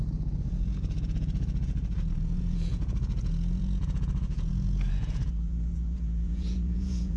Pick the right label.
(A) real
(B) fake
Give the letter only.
B